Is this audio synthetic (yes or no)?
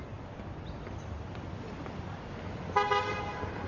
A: no